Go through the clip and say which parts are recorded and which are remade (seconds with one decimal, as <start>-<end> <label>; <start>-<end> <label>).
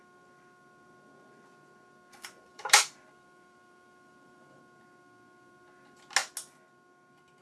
0.0-2.5 recorded; 2.5-4.6 remade; 4.6-7.4 recorded